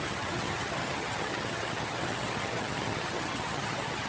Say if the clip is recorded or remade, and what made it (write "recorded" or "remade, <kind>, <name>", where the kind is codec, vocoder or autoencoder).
remade, vocoder, HiFi-GAN